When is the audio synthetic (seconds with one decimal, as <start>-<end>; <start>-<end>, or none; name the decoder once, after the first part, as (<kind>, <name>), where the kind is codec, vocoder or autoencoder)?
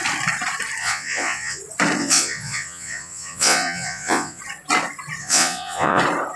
0.8-1.6 (vocoder, Vocos); 2.0-4.4; 5.2-6.0